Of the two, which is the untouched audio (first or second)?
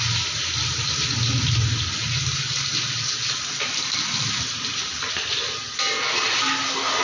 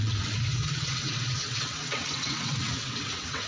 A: first